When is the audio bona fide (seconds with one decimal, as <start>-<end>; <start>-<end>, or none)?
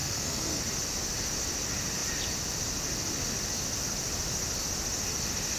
0.6-5.6